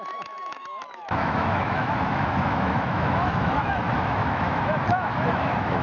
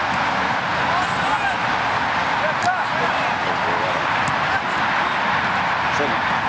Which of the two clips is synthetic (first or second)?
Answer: first